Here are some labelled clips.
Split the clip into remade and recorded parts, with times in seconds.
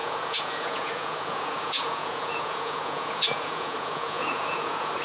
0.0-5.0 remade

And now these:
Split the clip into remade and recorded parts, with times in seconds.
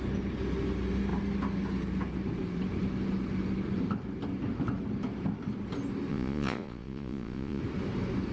0.0-6.1 recorded; 6.1-7.6 remade; 7.6-8.3 recorded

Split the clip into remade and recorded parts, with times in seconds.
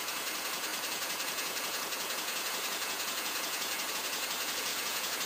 0.0-5.3 remade